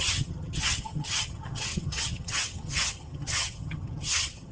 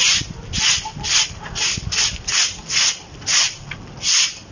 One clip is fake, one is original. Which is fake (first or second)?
first